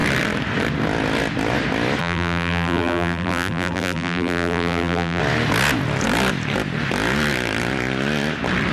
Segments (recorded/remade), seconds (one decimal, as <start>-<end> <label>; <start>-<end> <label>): 0.0-2.0 recorded; 2.0-5.2 remade; 5.2-8.7 recorded

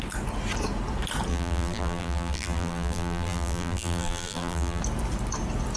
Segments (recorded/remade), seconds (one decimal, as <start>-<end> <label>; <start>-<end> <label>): 0.0-1.3 recorded; 1.3-4.8 remade; 4.8-5.8 recorded

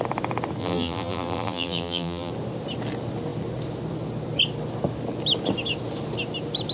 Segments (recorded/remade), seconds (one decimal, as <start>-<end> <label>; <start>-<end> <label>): 0.0-0.6 recorded; 0.6-2.3 remade; 2.3-6.7 recorded

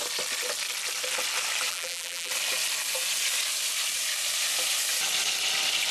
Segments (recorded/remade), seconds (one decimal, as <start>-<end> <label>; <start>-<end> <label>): 0.0-1.7 recorded; 1.7-2.3 remade; 2.3-5.9 recorded

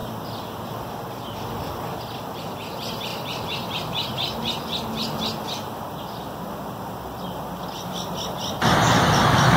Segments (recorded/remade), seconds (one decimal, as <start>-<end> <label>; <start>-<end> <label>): 0.0-1.7 remade; 1.7-9.6 recorded

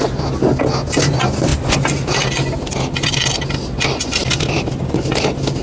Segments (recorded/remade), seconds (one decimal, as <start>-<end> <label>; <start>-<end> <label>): 0.0-1.5 recorded; 1.5-2.7 remade; 2.7-4.2 recorded; 4.2-5.1 remade; 5.1-5.6 recorded

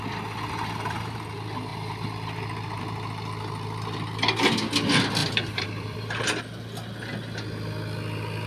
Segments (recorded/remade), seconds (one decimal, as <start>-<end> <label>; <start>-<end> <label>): 0.0-5.2 recorded; 5.2-6.4 remade; 6.4-8.5 recorded

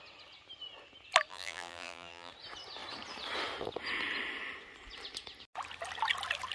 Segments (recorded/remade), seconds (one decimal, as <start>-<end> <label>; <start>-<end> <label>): 0.0-1.3 recorded; 1.3-2.3 remade; 2.3-6.5 recorded